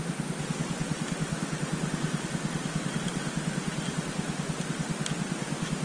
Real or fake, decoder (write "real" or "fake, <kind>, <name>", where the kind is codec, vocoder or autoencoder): real